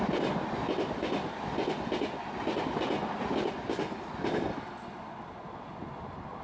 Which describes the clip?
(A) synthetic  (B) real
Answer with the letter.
B